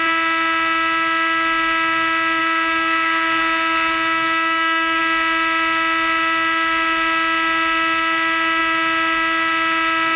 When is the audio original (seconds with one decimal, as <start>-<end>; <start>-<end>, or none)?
0.0-2.4; 5.0-10.2